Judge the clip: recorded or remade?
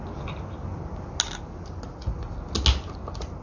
recorded